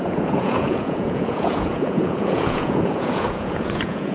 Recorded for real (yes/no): no